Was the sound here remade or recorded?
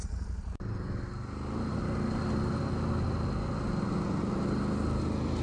recorded